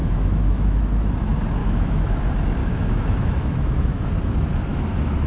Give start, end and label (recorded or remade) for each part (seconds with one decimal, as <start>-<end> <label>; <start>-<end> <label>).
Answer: 0.0-1.0 remade; 1.0-1.6 recorded; 1.6-2.2 remade; 2.2-2.6 recorded; 2.6-4.1 remade; 4.1-4.7 recorded; 4.7-5.3 remade